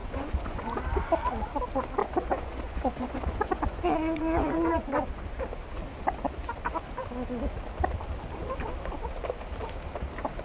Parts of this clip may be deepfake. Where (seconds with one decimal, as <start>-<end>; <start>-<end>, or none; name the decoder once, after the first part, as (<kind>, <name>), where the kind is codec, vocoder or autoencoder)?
0.0-0.8 (vocoder, Vocos); 2.0-5.2

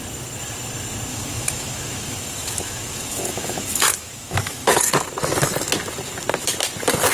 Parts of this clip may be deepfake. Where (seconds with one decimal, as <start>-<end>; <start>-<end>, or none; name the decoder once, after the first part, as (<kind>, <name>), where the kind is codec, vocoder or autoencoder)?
1.1-4.9 (autoencoder, DAC-VAE)

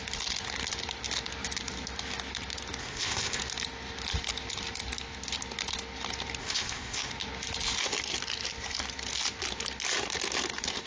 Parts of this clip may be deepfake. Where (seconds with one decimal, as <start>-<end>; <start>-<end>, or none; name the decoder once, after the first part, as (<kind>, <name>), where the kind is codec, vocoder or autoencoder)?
2.8-3.4 (codec, ZipCodec); 6.4-7.1

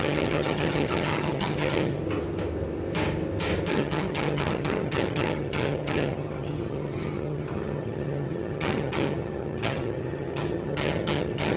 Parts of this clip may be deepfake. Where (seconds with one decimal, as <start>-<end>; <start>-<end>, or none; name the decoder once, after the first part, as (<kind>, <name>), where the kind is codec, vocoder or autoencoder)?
0.0-2.0 (vocoder, HiFi-GAN); 3.7-11.6

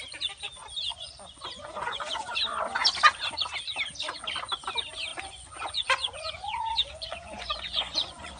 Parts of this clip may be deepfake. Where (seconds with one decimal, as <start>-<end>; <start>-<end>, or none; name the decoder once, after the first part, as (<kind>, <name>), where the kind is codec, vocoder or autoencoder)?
0.9-2.3 (vocoder, Vocos); 5.1-8.4

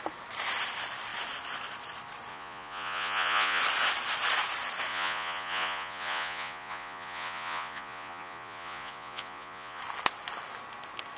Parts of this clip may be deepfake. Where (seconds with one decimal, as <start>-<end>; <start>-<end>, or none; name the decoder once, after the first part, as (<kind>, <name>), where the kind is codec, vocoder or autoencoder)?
2.3-3.6 (vocoder, Vocos); 4.9-9.8

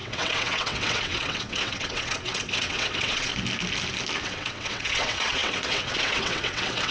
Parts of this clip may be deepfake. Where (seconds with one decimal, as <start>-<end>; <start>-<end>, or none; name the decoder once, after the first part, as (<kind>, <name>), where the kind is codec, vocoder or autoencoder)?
0.0-3.3 (vocoder, WaveNeXt); 4.2-6.9

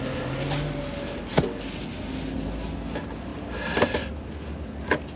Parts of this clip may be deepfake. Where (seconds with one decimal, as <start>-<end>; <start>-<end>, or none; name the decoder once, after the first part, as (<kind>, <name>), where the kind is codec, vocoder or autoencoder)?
none